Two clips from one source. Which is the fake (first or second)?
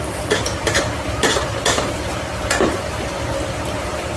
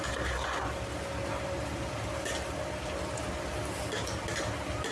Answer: first